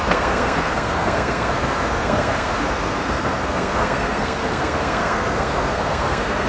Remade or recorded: remade